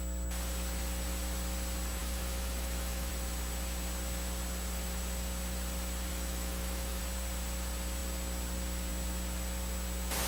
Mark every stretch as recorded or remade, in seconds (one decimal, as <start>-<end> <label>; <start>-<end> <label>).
0.0-2.0 recorded; 2.0-3.1 remade; 3.1-6.1 recorded; 6.1-7.0 remade; 7.0-10.3 recorded